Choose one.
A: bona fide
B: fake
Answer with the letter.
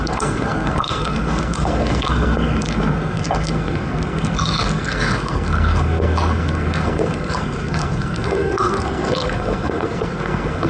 B